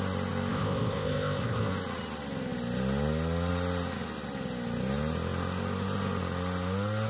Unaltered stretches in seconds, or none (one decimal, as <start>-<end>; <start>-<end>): 0.0-0.5; 1.7-7.1